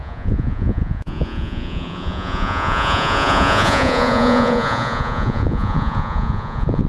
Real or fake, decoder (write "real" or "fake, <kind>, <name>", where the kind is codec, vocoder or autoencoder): fake, vocoder, Vocos